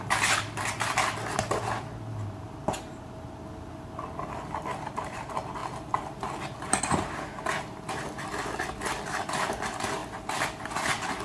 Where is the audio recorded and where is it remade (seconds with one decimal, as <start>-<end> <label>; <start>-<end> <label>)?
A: 0.0-5.6 recorded; 5.6-6.8 remade; 6.8-10.0 recorded; 10.0-10.6 remade; 10.6-11.2 recorded